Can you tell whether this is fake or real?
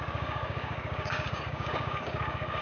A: fake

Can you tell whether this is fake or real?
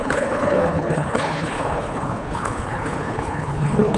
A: fake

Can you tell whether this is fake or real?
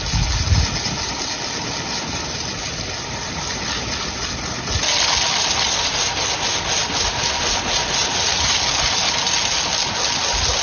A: real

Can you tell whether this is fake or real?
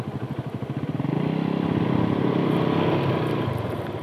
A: real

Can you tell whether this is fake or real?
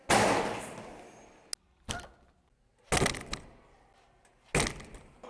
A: real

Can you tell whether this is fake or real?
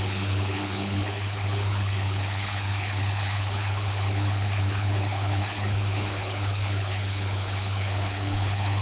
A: fake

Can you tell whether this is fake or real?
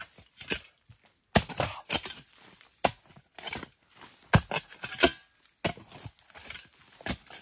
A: real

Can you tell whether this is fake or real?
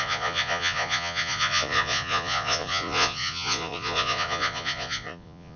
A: fake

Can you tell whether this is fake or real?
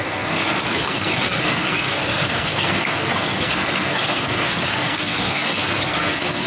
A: fake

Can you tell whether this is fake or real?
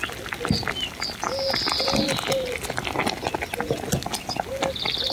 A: real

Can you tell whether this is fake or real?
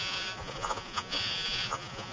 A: fake